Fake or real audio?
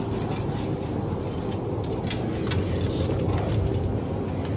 real